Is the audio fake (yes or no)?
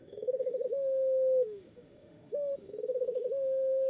yes